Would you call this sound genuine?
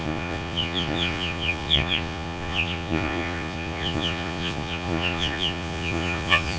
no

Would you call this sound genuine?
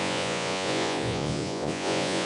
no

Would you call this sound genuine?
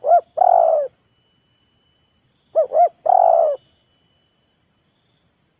yes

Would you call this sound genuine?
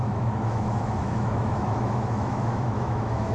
no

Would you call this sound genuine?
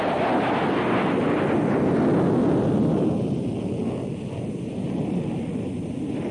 yes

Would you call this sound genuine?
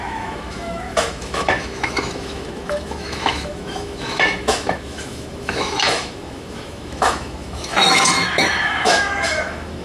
no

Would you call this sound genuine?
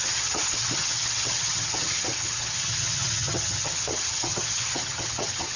no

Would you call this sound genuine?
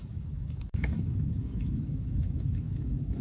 no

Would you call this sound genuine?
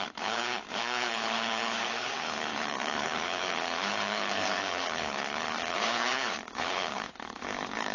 no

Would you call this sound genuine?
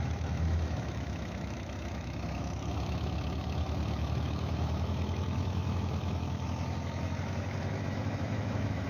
no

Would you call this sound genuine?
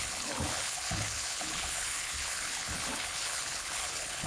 no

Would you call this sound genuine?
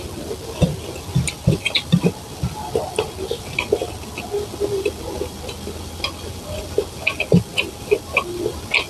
yes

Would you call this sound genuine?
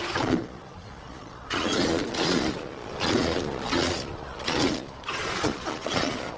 no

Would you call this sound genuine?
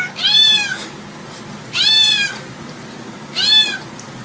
yes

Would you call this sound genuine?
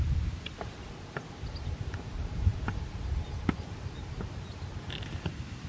yes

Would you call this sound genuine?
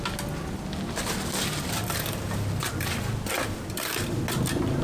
yes